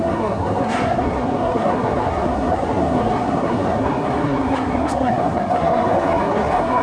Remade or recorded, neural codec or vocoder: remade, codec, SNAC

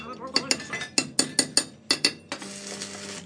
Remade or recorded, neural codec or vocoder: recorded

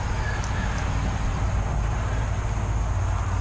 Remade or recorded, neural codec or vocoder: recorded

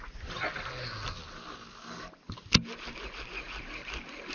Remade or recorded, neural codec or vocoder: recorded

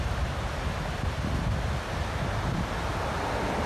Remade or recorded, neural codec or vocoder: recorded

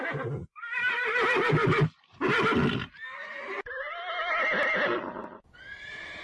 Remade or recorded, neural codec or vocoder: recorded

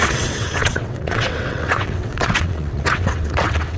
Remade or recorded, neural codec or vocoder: remade, vocoder, WaveNeXt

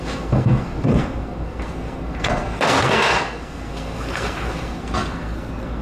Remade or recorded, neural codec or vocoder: remade, codec, SNAC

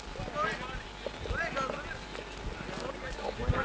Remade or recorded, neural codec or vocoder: recorded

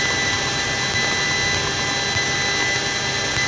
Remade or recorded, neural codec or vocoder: recorded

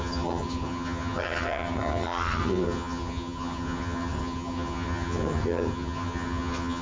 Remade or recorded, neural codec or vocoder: remade, vocoder, HiFi-GAN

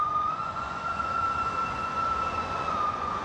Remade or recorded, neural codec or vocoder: remade, vocoder, Vocos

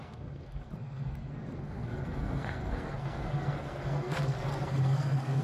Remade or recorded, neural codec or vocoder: remade, codec, SNAC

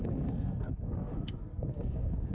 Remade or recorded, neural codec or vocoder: remade, codec, SNAC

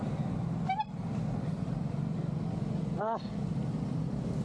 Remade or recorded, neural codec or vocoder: recorded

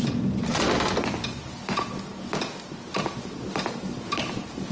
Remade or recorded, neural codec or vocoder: recorded